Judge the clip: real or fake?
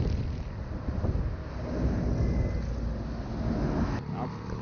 real